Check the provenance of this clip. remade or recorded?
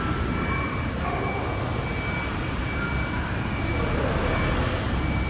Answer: recorded